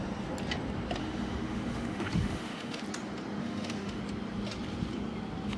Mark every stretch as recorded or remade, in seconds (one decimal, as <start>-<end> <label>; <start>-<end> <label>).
0.0-1.0 recorded; 1.0-2.8 remade; 2.8-3.4 recorded; 3.4-4.0 remade; 4.0-5.6 recorded